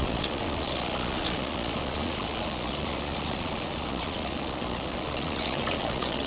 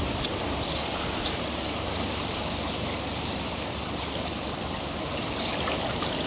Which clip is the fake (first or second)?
first